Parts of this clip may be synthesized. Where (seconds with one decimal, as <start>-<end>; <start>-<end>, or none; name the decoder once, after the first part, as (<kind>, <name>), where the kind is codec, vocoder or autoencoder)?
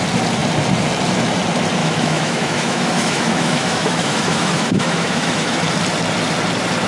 1.8-5.6 (autoencoder, DAC-VAE)